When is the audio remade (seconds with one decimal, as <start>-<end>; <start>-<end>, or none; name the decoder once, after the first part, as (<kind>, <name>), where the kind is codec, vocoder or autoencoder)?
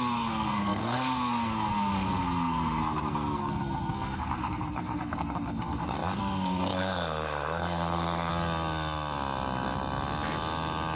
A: 0.0-8.3 (codec, SNAC)